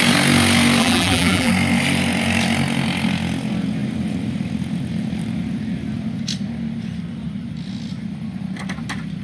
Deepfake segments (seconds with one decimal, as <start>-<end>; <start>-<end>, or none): 0.8-1.5